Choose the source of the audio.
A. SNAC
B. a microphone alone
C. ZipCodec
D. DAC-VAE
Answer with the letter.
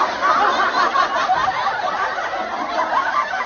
B